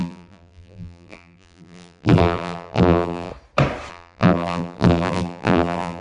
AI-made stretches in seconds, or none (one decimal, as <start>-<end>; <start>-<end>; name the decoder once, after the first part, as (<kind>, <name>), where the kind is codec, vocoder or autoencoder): 0.0-3.3 (vocoder, BigVGAN v2); 3.9-6.0